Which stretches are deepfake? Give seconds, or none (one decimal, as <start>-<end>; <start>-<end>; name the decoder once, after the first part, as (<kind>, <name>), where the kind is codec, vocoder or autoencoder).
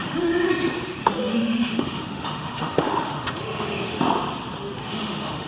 0.0-0.5 (autoencoder, DAC-VAE); 1.0-4.0; 4.8-5.5